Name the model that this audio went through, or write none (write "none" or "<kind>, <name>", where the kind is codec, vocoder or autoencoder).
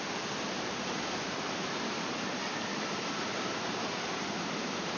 vocoder, BigVGAN v2